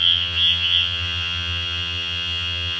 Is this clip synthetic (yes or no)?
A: yes